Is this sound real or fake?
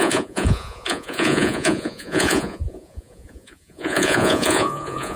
fake